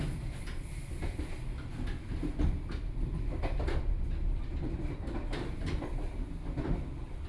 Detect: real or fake real